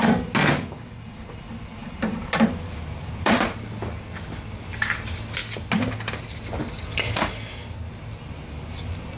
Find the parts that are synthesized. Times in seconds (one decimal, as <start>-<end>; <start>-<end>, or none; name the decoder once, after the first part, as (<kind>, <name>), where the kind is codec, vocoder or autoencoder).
none